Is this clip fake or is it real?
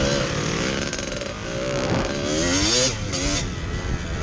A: real